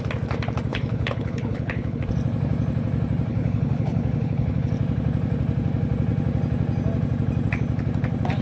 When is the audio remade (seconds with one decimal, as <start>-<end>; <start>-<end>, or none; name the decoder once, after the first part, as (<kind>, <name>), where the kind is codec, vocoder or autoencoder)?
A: 0.7-2.0 (codec, HILCodec); 3.3-4.7